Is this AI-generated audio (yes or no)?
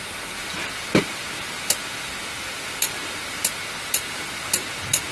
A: no